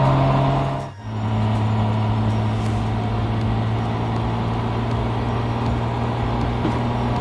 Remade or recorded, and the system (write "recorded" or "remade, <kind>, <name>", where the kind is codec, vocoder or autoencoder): recorded